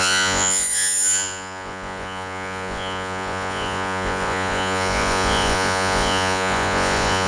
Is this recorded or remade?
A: remade